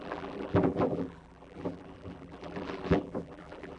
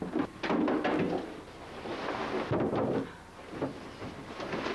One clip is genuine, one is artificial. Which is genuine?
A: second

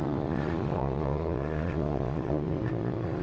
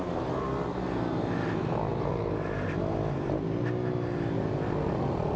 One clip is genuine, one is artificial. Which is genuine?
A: second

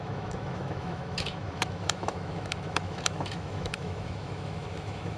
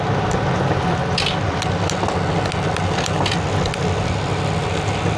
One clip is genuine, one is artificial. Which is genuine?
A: second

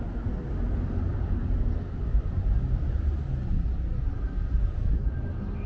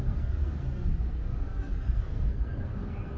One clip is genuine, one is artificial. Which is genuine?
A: first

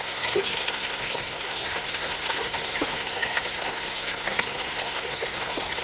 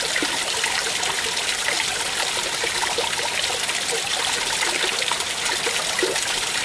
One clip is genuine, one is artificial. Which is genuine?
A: second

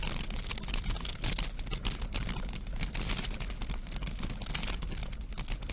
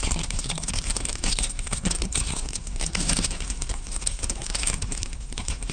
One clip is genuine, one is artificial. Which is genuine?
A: first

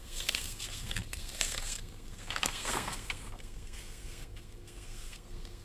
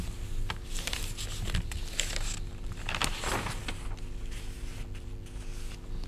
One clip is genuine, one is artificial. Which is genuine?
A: second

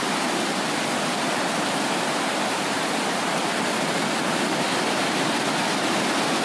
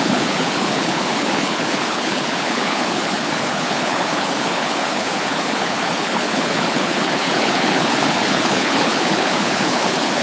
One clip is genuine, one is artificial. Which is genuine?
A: first